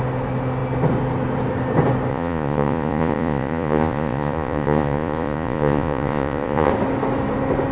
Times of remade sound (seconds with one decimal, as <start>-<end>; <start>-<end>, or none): 2.1-6.7